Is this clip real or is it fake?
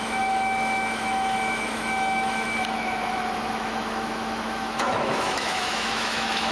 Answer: fake